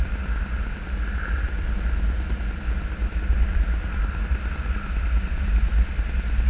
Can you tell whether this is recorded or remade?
recorded